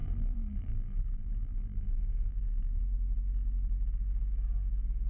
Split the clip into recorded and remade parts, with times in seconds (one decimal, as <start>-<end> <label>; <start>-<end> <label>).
0.0-2.8 remade; 2.8-5.1 recorded